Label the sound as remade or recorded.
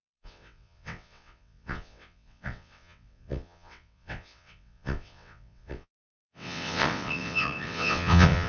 remade